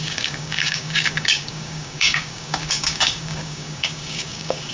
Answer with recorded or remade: remade